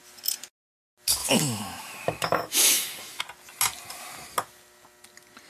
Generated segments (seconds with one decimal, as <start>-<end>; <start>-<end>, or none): 1.2-3.2

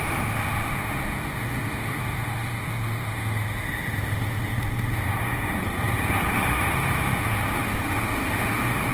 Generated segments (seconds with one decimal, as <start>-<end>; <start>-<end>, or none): 0.0-5.6; 6.3-8.9

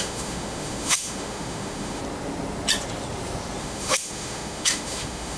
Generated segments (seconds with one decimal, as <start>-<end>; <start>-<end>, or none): 0.0-2.0; 3.6-5.4

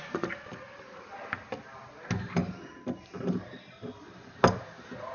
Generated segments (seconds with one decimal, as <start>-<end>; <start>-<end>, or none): none

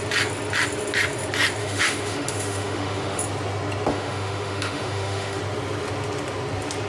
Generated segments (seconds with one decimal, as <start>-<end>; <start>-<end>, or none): 1.6-3.2; 3.9-5.4

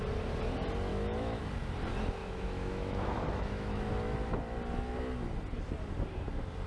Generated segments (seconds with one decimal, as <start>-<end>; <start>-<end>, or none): 0.9-1.4; 2.2-3.9